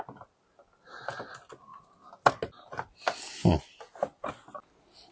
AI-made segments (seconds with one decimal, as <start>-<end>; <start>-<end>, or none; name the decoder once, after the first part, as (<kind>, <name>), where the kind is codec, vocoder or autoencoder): none